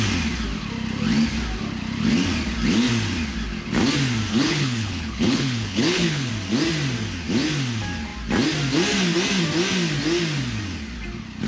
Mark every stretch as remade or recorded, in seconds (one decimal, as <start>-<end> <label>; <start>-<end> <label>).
0.0-4.3 recorded; 4.3-6.3 remade; 6.3-11.5 recorded